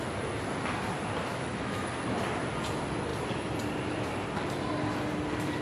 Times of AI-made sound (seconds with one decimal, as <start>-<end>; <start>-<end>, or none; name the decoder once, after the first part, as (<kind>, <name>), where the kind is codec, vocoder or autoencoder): 1.3-1.9 (autoencoder, DAC-VAE)